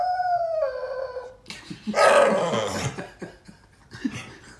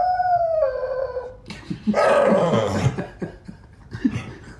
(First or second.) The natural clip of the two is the first